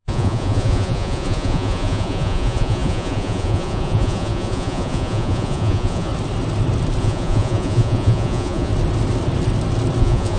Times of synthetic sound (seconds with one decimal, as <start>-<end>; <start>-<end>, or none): 0.0-6.1; 7.0-8.7; 10.0-10.4